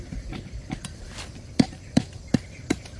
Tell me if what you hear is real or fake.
real